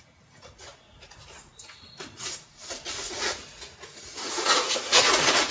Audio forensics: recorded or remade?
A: remade